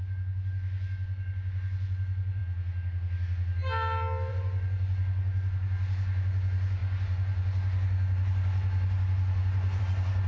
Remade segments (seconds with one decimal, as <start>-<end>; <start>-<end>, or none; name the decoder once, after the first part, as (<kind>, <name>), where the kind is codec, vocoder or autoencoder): 0.0-2.4 (vocoder, Vocos); 4.3-10.3